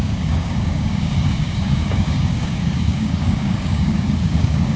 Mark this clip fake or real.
fake